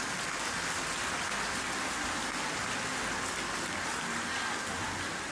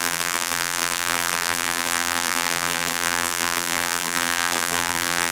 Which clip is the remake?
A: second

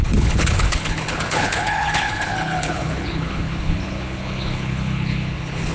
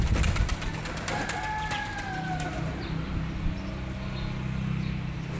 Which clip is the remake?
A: first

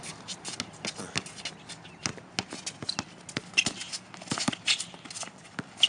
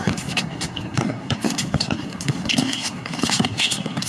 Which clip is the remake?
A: second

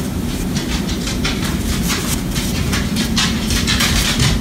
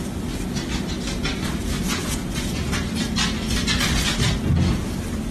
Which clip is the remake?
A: first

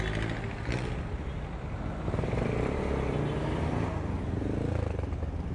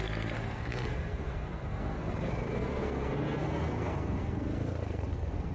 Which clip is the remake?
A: second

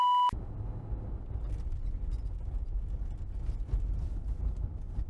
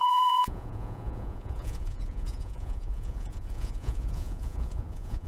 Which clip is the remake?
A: second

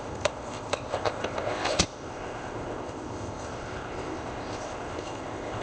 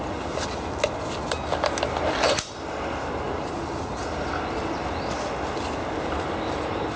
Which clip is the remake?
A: first